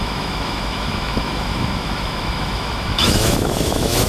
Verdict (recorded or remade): remade